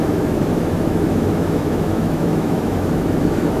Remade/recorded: remade